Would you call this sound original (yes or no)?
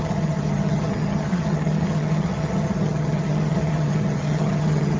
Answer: no